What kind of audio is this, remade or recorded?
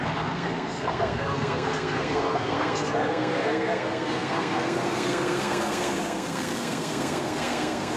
remade